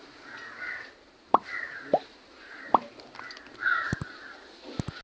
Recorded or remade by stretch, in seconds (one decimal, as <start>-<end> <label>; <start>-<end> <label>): 0.0-5.0 recorded